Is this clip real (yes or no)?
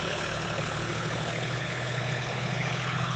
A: no